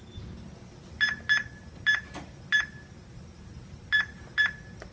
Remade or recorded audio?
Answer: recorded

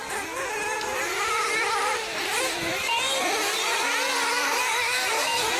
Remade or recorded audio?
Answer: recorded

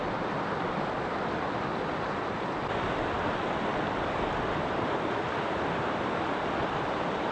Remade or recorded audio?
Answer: remade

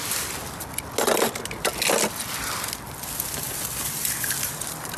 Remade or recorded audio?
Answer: recorded